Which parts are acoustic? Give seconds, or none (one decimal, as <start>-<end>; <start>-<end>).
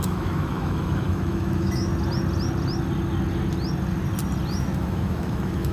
1.9-4.6